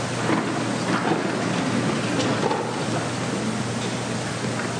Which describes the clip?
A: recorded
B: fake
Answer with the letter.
A